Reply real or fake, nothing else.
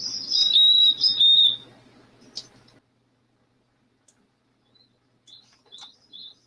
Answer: real